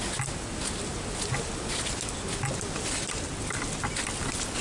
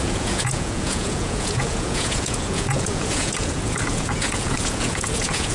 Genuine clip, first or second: first